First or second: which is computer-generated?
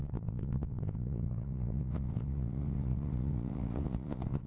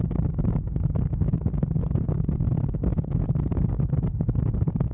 first